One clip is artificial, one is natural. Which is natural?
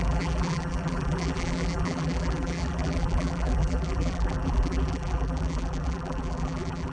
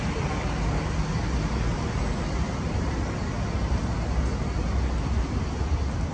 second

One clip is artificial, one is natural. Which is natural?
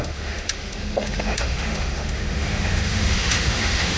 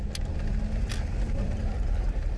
second